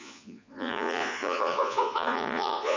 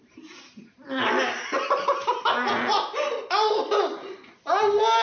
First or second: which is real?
second